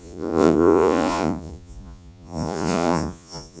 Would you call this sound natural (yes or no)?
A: no